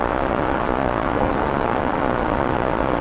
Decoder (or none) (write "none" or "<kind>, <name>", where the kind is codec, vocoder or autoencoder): vocoder, Vocos